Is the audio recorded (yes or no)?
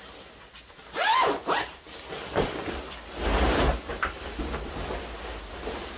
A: yes